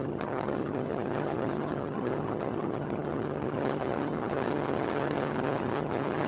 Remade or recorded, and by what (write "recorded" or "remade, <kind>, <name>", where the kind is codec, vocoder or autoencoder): remade, vocoder, HiFi-GAN